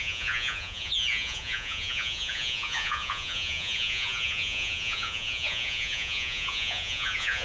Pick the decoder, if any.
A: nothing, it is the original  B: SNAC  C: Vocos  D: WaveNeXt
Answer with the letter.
C